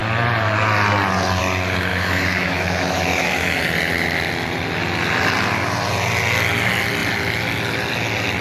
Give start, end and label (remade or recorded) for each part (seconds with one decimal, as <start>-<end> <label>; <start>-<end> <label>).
0.0-1.9 recorded; 1.9-3.6 remade; 3.6-8.4 recorded